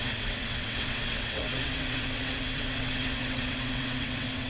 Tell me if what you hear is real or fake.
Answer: fake